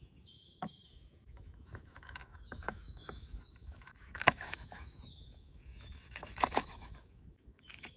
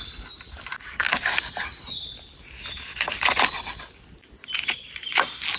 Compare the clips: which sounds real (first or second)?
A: second